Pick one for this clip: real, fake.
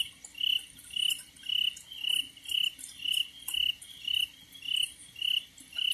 real